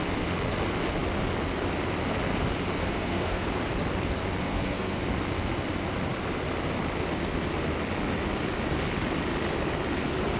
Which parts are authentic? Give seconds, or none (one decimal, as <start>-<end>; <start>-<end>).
0.0-2.8; 3.5-4.4; 5.0-10.4